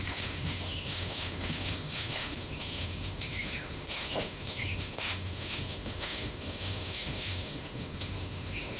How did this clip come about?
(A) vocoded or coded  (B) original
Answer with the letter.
A